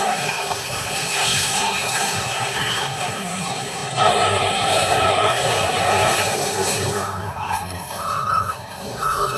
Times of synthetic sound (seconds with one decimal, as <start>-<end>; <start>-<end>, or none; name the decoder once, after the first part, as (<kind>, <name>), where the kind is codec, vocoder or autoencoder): 0.0-9.4 (codec, SNAC)